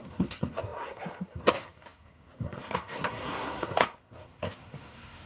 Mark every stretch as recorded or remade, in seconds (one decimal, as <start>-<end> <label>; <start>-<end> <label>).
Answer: 0.0-5.3 remade